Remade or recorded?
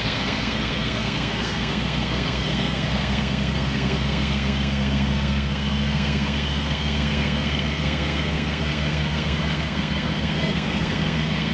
remade